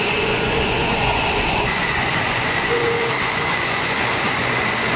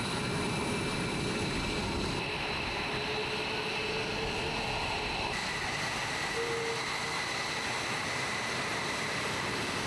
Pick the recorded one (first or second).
second